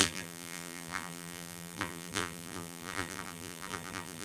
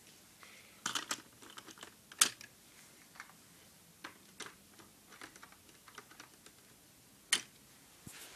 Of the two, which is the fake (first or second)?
first